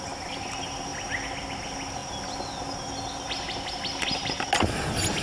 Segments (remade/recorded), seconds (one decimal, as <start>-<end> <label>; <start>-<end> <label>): 0.0-5.2 recorded